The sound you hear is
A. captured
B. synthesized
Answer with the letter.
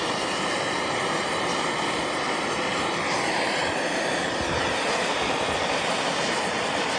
B